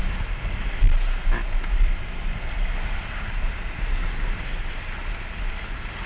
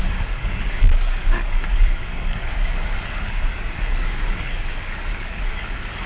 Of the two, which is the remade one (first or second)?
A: second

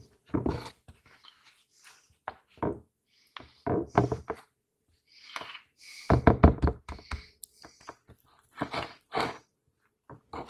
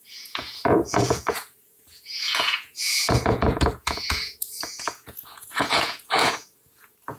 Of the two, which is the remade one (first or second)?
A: second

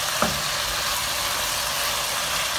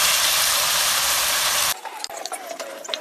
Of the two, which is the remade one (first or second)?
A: second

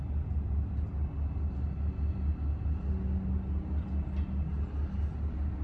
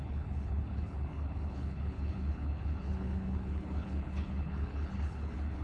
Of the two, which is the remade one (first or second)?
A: second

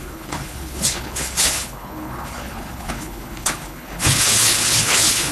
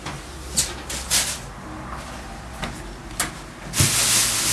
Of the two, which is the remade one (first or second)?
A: first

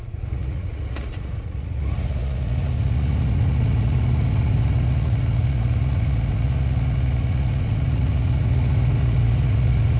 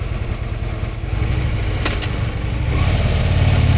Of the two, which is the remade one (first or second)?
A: first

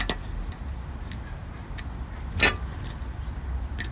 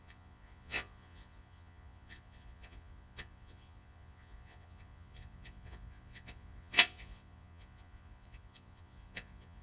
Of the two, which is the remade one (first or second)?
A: second